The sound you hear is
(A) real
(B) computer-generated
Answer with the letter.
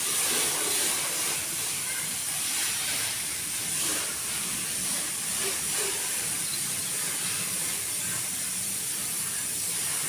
B